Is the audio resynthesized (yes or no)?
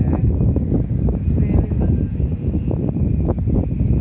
no